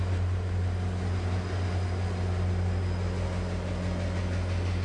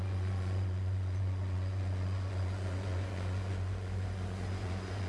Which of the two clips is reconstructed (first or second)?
second